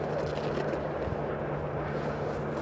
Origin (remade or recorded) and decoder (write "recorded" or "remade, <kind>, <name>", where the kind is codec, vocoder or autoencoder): recorded